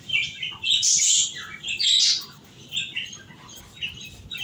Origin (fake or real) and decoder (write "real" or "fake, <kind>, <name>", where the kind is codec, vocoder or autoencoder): real